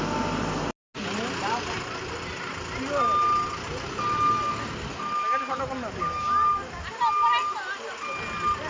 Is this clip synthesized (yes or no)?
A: no